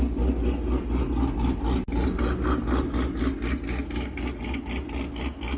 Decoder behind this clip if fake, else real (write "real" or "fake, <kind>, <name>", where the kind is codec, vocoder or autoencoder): real